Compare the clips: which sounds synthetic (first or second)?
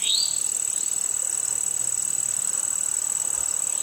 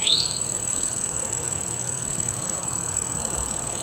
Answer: second